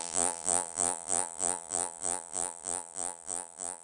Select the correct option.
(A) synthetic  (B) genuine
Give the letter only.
A